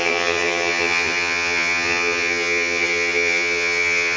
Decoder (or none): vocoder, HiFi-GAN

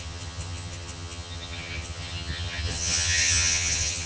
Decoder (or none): vocoder, HiFi-GAN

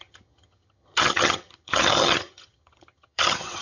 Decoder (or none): vocoder, HiFi-GAN